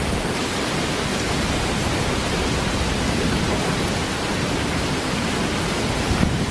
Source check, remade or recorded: remade